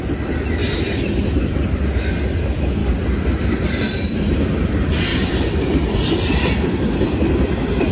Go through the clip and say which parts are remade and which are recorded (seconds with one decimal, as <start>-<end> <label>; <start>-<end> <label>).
0.0-2.8 recorded; 2.8-4.2 remade; 4.2-5.1 recorded; 5.1-6.4 remade; 6.4-7.9 recorded